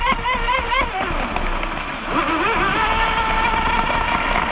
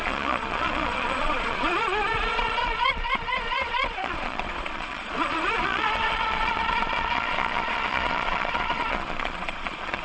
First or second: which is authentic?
first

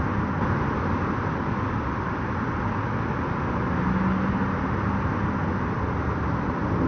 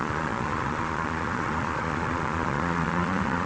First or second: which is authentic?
first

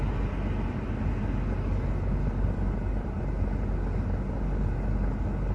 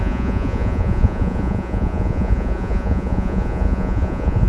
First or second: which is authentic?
first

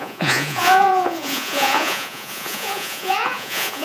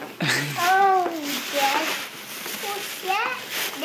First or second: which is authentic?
second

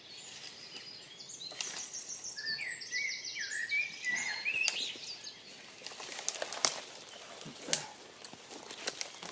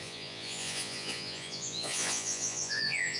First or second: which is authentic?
first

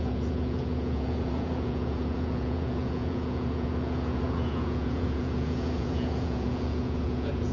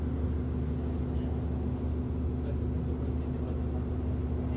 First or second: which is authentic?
second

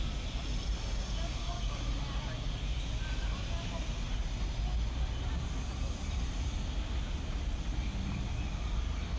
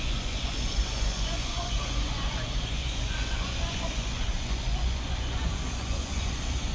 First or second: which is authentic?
first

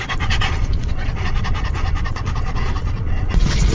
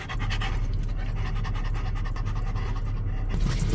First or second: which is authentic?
second